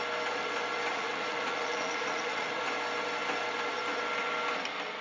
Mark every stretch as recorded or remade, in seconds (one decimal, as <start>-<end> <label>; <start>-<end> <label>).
0.0-0.9 recorded; 0.9-2.6 remade; 2.6-5.0 recorded